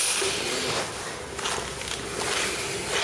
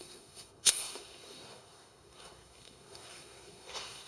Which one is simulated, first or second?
second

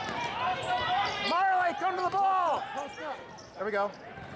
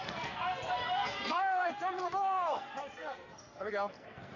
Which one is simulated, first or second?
second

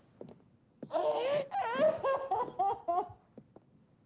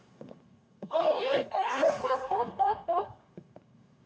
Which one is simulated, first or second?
second